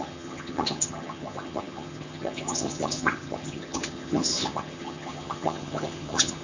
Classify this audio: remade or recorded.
remade